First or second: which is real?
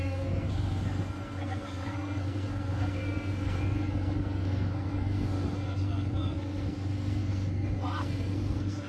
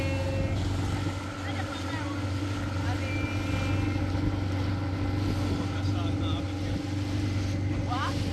second